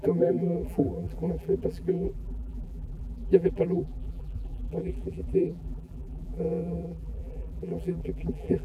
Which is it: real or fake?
fake